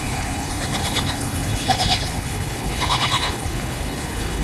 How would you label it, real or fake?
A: fake